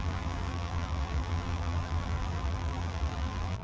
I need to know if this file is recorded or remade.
remade